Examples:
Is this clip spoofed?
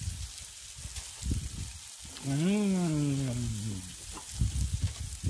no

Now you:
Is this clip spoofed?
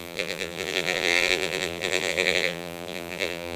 yes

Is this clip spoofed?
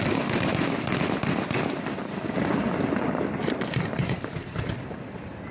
yes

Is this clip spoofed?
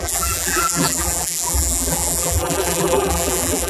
yes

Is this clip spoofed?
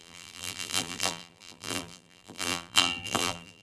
yes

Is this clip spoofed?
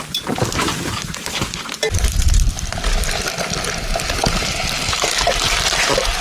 yes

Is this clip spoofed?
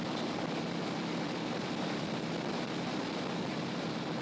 yes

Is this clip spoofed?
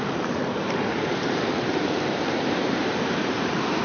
yes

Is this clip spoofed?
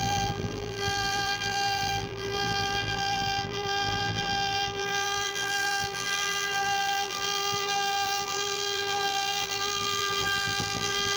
yes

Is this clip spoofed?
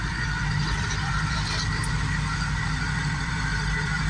yes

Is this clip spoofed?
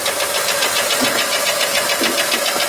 no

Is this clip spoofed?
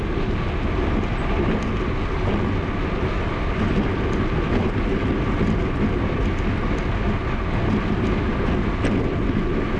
no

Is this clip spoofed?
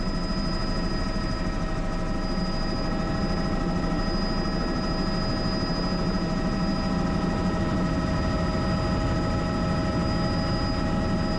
no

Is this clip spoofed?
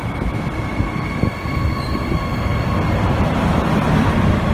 yes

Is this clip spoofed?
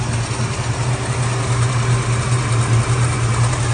no